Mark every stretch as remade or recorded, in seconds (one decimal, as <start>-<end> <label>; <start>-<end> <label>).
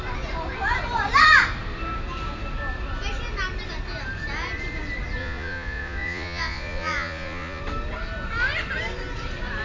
0.0-5.2 recorded; 5.2-7.6 remade; 7.6-9.6 recorded